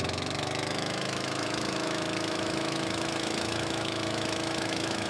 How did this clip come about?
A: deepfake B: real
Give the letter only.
A